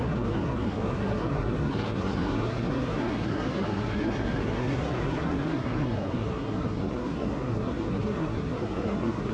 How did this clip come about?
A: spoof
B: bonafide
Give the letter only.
A